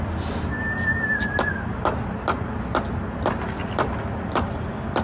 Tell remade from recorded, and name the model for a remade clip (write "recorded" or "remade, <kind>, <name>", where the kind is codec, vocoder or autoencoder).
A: recorded